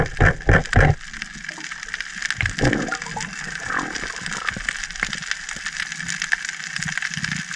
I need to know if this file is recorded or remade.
recorded